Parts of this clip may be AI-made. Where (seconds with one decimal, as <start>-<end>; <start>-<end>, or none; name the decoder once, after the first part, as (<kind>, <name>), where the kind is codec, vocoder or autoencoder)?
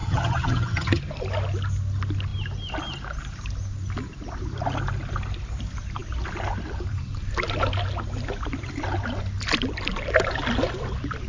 0.0-1.0 (vocoder, HiFi-GAN)